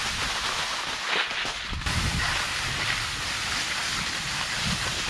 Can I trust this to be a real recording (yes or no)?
yes